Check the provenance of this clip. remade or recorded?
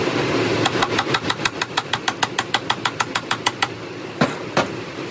recorded